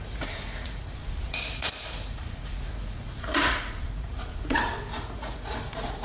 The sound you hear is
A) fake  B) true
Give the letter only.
A